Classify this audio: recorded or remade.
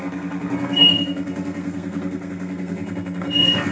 remade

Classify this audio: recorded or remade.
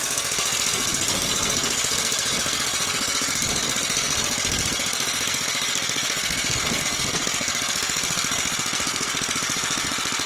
remade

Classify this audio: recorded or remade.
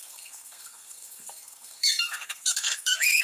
remade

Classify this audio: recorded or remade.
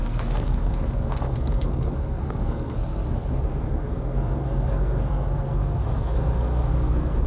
remade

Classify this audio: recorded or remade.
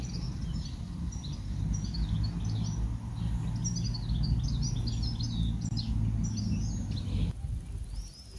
recorded